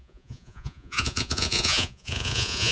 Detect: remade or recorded remade